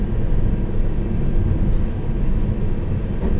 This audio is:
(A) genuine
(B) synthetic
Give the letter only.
A